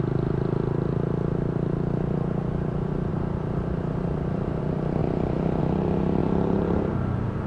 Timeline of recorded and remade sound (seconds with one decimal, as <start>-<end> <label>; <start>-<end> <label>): 0.0-3.1 recorded; 3.1-4.6 remade; 4.6-5.0 recorded; 5.0-5.6 remade; 5.6-6.2 recorded; 6.2-6.9 remade; 6.9-7.5 recorded